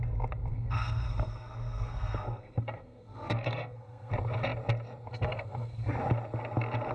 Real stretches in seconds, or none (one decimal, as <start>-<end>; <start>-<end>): 0.0-0.5; 4.1-5.1; 5.9-6.9